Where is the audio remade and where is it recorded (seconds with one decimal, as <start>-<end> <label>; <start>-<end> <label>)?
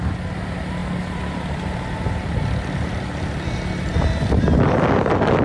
0.0-5.4 recorded